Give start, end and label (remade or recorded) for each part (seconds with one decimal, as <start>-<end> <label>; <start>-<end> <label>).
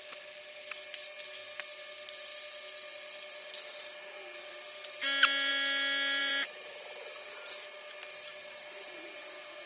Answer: 0.0-6.2 recorded; 6.2-7.5 remade; 7.5-9.7 recorded